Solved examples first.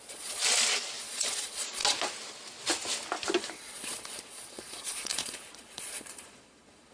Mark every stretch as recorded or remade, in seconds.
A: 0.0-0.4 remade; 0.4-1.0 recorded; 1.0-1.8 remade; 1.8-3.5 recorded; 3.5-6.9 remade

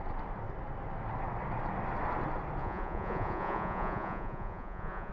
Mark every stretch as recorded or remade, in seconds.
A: 0.0-2.6 recorded; 2.6-5.1 remade

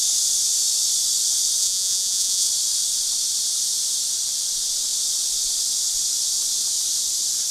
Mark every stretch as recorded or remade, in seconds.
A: 0.0-1.6 recorded; 1.6-2.5 remade; 2.5-7.5 recorded

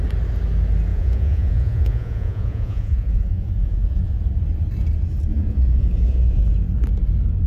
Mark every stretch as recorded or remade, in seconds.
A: 0.0-0.9 recorded; 0.9-4.2 remade; 4.2-5.3 recorded; 5.3-6.4 remade; 6.4-7.5 recorded

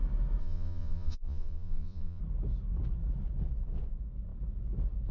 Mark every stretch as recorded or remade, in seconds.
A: 0.0-0.4 recorded; 0.4-2.2 remade; 2.2-5.1 recorded

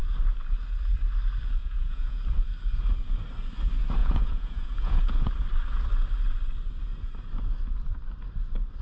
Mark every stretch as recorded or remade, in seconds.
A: 0.0-1.6 recorded; 1.6-2.2 remade; 2.2-4.0 recorded; 4.0-5.3 remade; 5.3-8.8 recorded

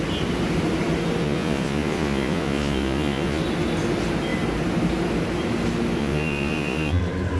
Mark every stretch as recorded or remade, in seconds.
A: 0.0-1.2 recorded; 1.2-3.4 remade; 3.4-6.0 recorded; 6.0-7.0 remade; 7.0-7.4 recorded